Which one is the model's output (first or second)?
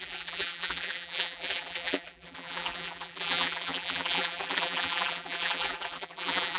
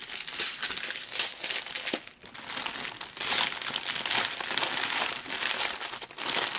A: first